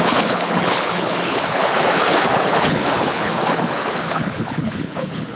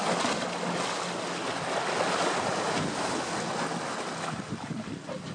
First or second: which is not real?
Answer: first